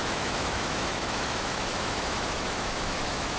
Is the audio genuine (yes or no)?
no